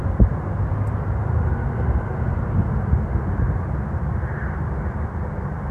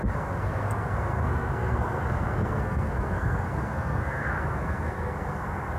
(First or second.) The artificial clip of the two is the second